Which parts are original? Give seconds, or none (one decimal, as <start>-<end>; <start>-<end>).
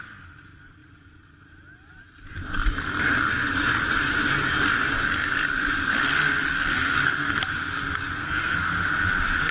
0.0-6.8; 7.4-8.2; 8.7-9.5